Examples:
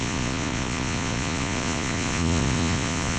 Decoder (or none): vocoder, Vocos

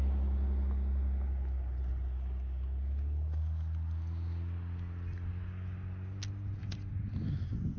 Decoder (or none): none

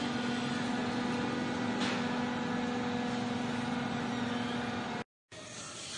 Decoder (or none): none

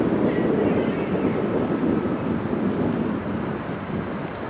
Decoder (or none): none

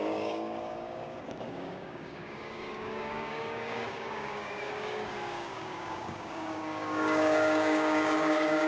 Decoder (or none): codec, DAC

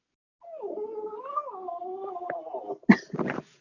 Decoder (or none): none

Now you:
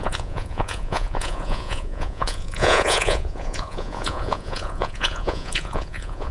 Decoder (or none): vocoder, Vocos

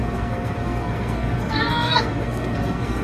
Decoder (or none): codec, SNAC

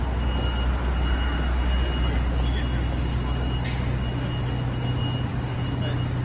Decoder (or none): none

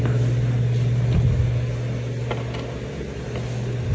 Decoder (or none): none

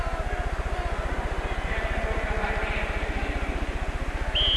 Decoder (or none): none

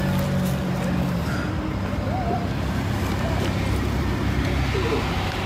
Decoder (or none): none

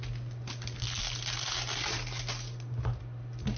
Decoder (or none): none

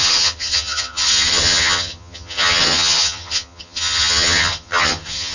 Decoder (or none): vocoder, HiFi-GAN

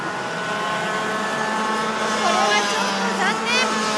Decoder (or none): none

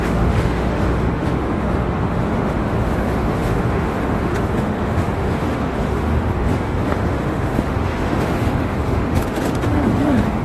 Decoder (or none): autoencoder, DAC-VAE